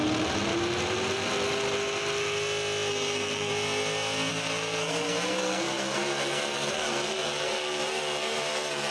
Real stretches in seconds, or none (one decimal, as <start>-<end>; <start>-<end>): 0.0-2.9; 3.5-4.3